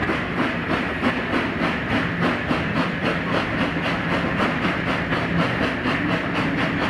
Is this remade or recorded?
recorded